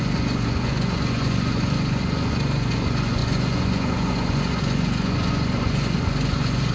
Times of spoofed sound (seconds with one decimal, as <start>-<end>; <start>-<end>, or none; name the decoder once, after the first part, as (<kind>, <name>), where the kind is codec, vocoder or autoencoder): 0.0-6.7 (vocoder, Vocos)